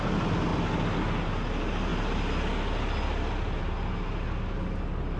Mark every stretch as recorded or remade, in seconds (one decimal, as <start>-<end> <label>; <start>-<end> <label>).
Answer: 0.0-5.2 recorded